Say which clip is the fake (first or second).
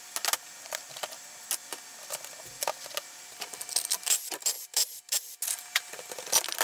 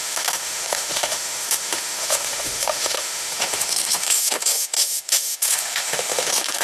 second